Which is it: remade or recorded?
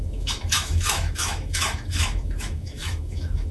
remade